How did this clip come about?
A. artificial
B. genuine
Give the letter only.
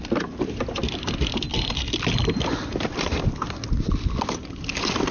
B